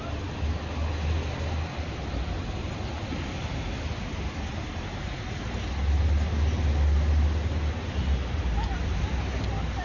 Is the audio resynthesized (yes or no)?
no